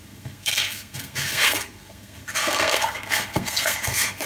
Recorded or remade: remade